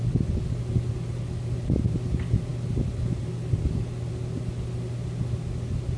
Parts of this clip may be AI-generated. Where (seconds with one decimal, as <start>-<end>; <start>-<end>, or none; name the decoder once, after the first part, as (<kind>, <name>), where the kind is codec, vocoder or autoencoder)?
none